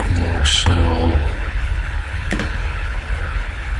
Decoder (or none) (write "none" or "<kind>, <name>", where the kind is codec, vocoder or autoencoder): codec, HILCodec